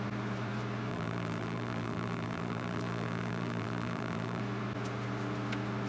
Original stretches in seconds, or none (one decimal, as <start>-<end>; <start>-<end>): 0.0-0.9; 4.4-5.9

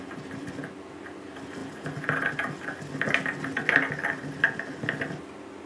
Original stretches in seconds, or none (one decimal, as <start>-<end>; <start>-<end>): 0.0-5.7